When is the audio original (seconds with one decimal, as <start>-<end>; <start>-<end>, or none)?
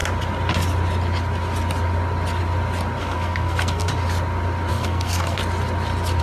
0.0-3.0; 3.9-4.7; 5.4-6.2